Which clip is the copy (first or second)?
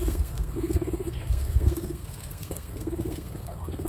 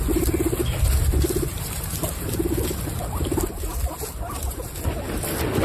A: first